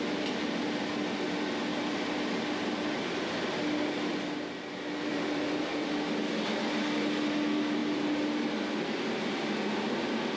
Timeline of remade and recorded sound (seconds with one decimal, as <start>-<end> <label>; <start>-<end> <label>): 0.0-5.1 recorded; 5.1-5.9 remade; 5.9-10.4 recorded